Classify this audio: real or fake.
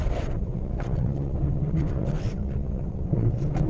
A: fake